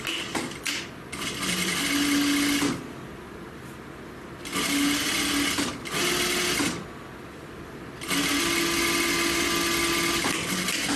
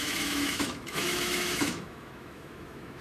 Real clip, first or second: first